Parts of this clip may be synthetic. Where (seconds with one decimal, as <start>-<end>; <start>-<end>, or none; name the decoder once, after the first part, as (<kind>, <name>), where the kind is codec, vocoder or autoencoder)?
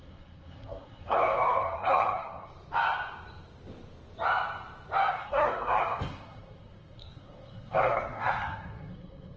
0.0-2.5 (codec, SNAC); 5.1-9.4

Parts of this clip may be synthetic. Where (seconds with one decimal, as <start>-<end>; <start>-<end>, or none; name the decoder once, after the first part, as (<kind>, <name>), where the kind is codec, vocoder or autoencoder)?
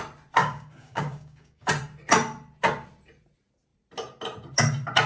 0.4-1.7 (codec, DAC)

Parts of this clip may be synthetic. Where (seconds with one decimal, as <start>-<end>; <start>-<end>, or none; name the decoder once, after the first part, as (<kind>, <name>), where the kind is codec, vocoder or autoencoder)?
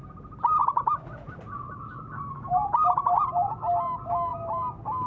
none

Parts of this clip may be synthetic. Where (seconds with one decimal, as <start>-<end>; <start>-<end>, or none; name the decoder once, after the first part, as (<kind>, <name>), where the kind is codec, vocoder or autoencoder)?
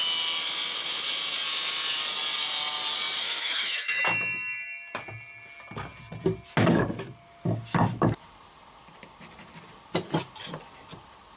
3.2-4.0 (autoencoder, DAC-VAE)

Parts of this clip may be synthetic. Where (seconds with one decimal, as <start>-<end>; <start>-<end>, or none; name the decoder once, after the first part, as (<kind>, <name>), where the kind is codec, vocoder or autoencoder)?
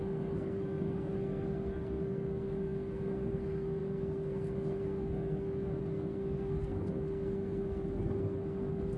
0.0-9.0 (codec, SNAC)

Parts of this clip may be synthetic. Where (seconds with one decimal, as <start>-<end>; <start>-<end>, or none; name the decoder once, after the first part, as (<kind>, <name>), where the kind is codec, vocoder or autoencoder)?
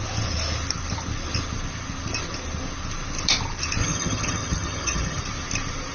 3.8-5.2 (vocoder, HiFi-GAN)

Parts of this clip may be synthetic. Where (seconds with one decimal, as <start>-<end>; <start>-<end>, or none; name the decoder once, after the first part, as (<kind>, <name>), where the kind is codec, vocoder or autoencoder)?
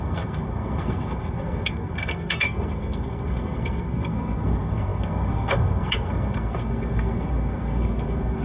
0.0-8.4 (codec, SNAC)